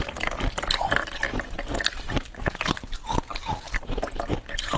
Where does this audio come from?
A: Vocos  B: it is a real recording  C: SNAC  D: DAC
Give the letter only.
B